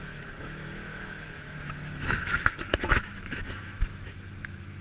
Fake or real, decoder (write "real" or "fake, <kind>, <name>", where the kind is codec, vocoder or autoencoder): fake, autoencoder, DAC-VAE